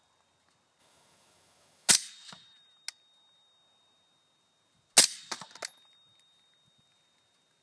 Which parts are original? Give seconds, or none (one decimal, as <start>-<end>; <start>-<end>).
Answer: 0.0-0.8; 1.9-7.6